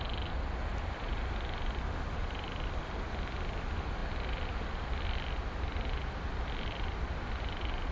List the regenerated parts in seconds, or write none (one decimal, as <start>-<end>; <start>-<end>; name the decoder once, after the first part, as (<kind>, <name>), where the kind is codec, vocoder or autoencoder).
none